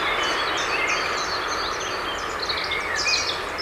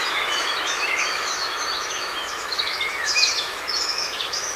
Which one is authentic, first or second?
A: first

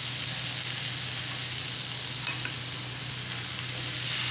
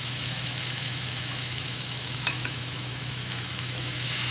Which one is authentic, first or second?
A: first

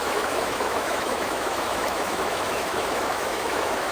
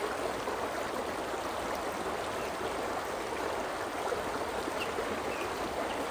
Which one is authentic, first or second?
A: second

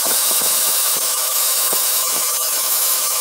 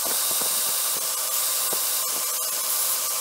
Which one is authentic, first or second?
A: second